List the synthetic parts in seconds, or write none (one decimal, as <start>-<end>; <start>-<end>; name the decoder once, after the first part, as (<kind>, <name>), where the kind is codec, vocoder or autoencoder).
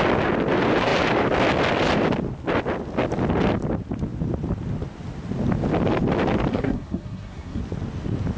6.5-7.6 (codec, SNAC)